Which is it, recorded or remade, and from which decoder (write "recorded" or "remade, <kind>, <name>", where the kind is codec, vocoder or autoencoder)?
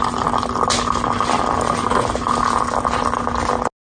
recorded